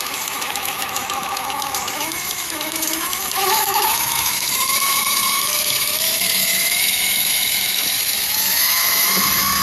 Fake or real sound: fake